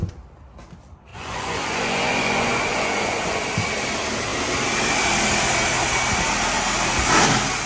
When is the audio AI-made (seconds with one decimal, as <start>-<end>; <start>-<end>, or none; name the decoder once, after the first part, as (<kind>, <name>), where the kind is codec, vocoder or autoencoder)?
1.1-3.4 (vocoder, Vocos)